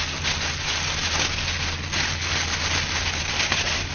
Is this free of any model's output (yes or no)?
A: yes